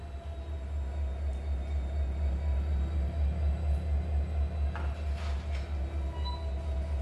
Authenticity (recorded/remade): recorded